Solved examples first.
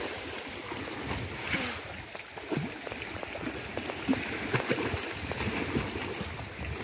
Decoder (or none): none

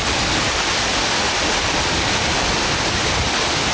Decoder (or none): none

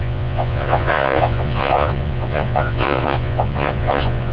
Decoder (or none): vocoder, Vocos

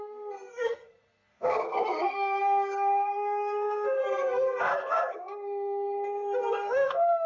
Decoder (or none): codec, SNAC